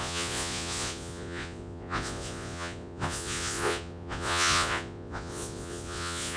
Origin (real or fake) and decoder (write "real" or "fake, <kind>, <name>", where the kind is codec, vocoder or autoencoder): fake, vocoder, Vocos